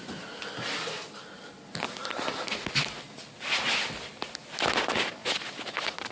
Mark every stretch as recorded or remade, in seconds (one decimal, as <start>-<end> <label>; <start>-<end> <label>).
0.0-6.1 recorded